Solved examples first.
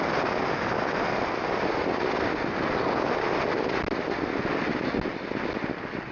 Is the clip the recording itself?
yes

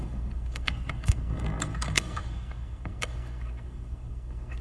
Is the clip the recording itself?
no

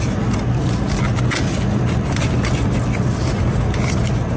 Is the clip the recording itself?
yes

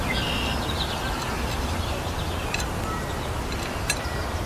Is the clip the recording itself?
yes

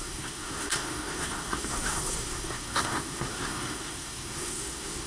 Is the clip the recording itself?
no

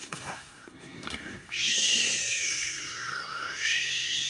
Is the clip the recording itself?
no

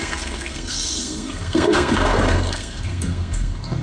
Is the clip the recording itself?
no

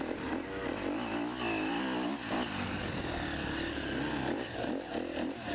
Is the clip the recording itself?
yes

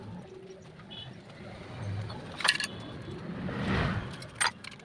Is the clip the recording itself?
yes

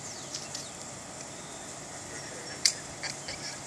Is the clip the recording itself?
yes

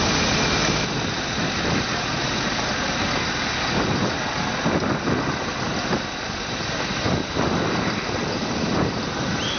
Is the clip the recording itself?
yes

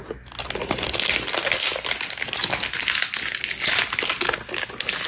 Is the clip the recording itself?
yes